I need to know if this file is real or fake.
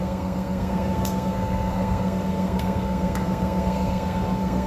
fake